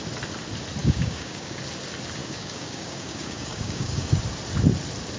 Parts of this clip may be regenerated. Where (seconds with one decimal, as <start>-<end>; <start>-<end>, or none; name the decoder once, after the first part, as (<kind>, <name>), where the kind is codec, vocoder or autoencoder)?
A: 0.8-1.6 (codec, DAC); 2.2-4.2